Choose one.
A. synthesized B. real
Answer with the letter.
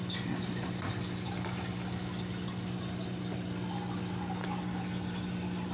B